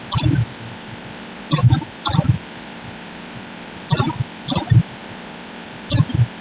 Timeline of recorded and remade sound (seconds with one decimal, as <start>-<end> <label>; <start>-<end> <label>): 0.0-1.6 recorded; 1.6-2.4 remade; 2.4-6.4 recorded